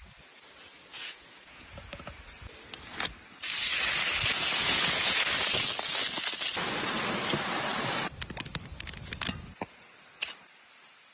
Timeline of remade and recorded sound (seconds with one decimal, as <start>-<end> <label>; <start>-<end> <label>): 0.0-0.9 recorded; 0.9-2.2 remade; 2.2-4.3 recorded; 4.3-5.2 remade; 5.2-11.1 recorded